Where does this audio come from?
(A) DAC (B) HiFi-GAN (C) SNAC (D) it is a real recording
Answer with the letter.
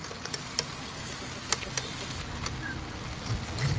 D